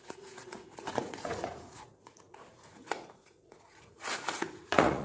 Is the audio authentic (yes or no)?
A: no